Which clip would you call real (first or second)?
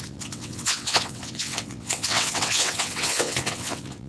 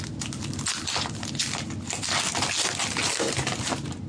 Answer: second